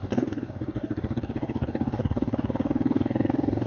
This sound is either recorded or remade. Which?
remade